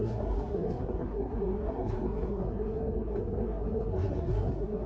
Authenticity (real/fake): fake